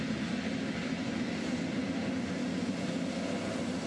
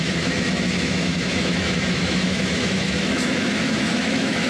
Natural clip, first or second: first